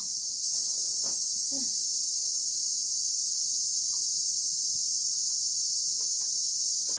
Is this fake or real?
real